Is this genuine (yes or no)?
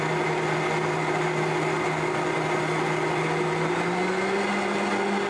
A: yes